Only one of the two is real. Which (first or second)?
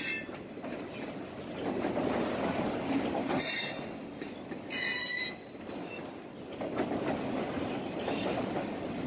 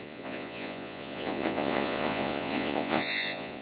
first